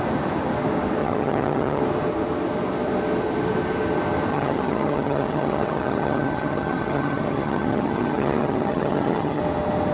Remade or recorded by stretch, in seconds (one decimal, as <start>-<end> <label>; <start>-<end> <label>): 0.0-1.0 recorded; 1.0-1.8 remade; 1.8-4.3 recorded; 4.3-9.4 remade; 9.4-9.9 recorded